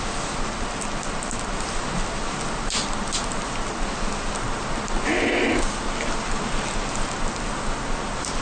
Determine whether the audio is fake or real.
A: real